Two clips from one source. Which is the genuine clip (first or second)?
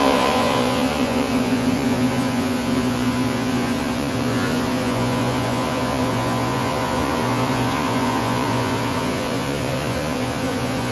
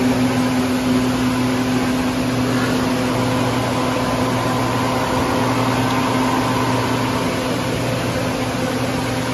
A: second